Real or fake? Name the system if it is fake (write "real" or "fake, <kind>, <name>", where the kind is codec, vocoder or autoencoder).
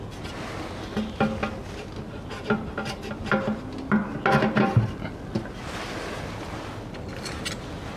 real